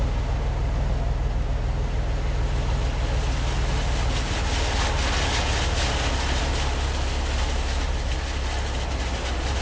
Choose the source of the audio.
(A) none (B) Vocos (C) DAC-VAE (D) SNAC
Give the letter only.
A